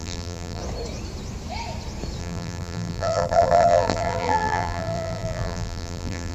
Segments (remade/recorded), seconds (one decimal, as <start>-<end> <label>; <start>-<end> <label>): 0.0-0.6 remade; 0.6-2.2 recorded; 2.2-6.3 remade